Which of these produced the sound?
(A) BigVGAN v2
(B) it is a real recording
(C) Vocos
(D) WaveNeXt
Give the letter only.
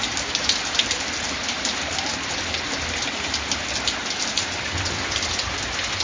B